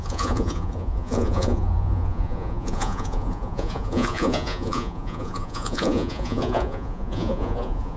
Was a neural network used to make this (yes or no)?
yes